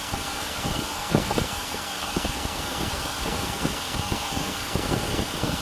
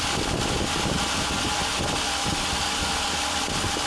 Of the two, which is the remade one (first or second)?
first